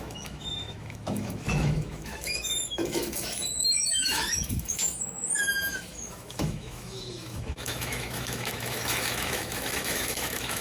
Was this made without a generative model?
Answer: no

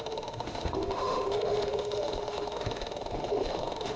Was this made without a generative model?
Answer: no